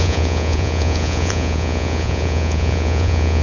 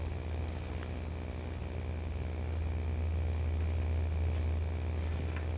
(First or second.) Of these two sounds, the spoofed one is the first